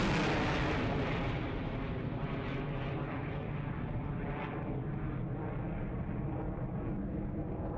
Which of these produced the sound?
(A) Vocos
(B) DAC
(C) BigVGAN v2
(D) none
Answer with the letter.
D